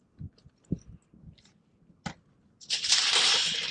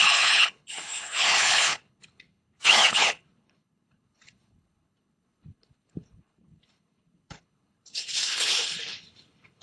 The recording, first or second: first